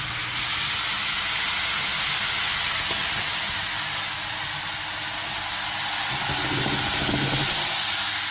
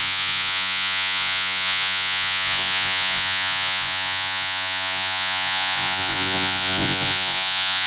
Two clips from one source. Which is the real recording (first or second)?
first